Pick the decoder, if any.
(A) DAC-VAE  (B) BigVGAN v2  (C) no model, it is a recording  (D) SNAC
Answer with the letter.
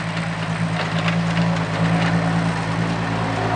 C